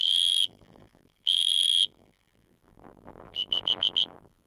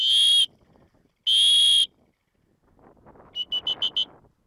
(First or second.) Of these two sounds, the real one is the second